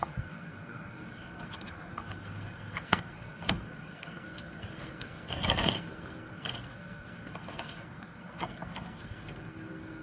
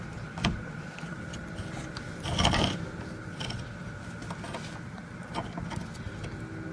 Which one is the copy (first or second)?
first